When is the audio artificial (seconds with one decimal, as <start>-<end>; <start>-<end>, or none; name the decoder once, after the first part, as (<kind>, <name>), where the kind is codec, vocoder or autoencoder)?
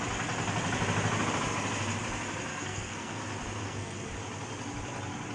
2.5-3.2 (codec, SNAC); 3.6-4.1